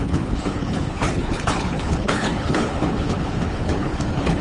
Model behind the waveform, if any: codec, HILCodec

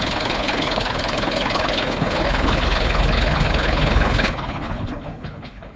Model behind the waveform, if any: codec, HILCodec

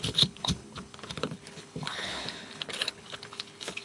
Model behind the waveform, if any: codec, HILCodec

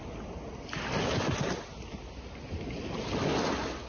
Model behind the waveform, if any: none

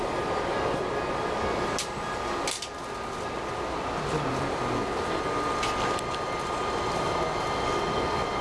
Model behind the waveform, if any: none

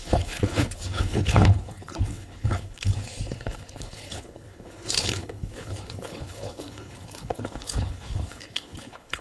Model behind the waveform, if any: codec, HILCodec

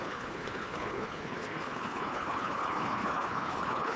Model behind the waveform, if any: codec, HILCodec